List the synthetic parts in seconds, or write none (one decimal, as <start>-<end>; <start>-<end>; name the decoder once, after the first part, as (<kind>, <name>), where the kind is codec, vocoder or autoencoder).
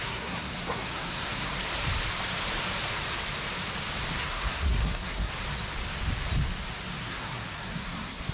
0.0-1.5 (codec, SNAC); 4.1-5.3; 7.0-8.3